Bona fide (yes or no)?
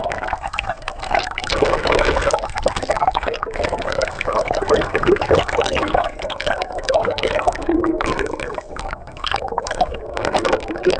no